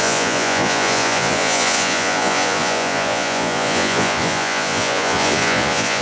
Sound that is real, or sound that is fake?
fake